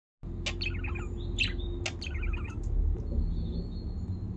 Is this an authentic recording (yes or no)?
yes